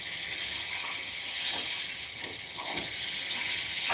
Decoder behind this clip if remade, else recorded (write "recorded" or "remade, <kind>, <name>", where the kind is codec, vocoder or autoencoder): remade, vocoder, HiFi-GAN